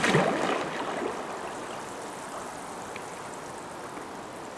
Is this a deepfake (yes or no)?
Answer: no